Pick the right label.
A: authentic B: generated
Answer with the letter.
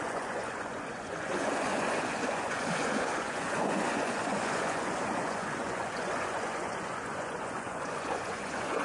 B